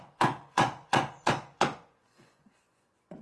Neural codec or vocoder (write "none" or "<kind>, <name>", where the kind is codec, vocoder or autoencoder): vocoder, Vocos